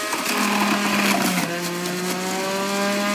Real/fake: real